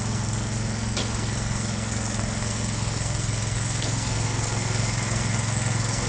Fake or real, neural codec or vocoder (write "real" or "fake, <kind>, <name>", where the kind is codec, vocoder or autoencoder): fake, codec, SNAC